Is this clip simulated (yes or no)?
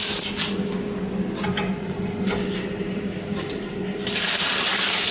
no